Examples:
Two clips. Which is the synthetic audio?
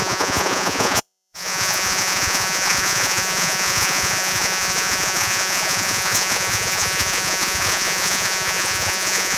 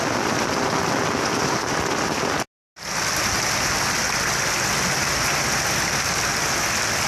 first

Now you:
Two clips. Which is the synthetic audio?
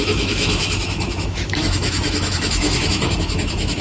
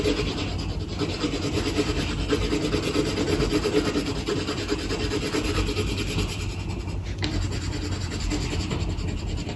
first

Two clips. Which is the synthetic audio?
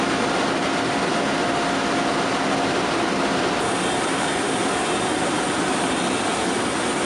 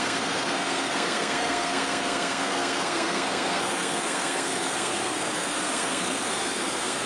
second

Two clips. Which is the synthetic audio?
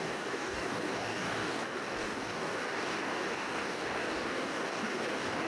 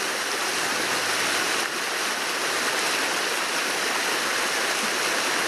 first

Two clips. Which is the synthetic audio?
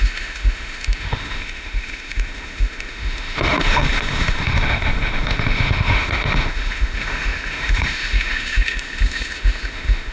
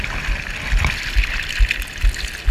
first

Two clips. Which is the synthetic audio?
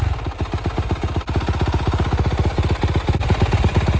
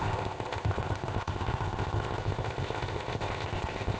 second